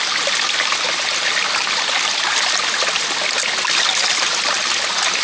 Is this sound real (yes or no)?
yes